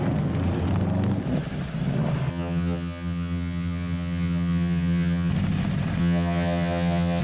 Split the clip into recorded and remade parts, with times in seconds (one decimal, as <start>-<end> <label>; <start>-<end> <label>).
0.0-2.3 recorded; 2.3-5.3 remade; 5.3-6.0 recorded; 6.0-7.2 remade